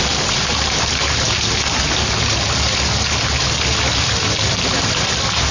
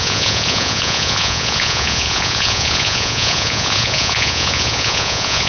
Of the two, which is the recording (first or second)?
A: first